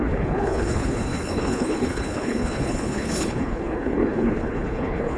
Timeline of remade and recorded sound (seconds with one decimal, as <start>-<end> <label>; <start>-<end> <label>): 0.0-5.2 remade

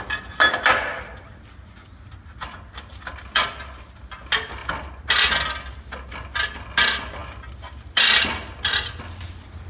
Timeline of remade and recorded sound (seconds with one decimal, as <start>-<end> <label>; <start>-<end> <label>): 0.0-9.7 recorded

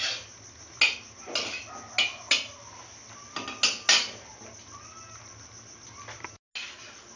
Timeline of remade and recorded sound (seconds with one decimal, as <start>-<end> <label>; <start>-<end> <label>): 0.0-7.2 recorded

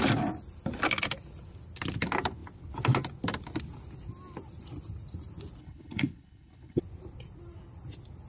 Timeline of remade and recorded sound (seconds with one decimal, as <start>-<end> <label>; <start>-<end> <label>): 0.0-5.6 recorded; 5.6-6.8 remade; 6.8-8.3 recorded

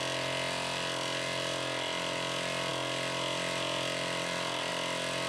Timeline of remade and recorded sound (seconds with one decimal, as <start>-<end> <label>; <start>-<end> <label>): 0.0-5.3 recorded

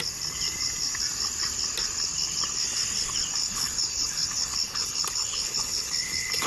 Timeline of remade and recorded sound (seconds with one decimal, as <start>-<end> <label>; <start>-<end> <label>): 0.0-3.4 recorded; 3.4-6.5 remade